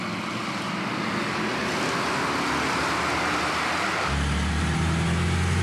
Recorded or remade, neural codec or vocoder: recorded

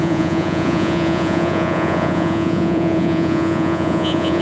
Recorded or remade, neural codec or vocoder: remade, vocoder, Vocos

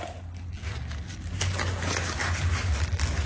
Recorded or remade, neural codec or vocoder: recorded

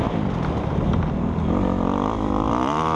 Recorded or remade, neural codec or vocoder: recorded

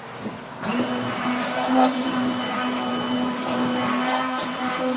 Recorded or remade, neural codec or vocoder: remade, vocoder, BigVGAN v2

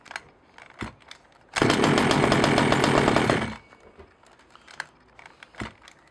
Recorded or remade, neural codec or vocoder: recorded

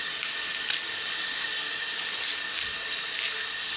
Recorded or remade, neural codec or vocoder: recorded